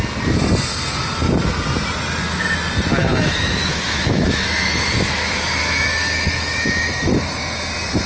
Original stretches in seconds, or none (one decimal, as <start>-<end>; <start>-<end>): 0.0-3.0; 7.3-8.1